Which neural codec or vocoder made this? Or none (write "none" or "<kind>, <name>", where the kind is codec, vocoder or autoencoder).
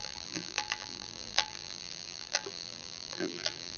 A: vocoder, BigVGAN v2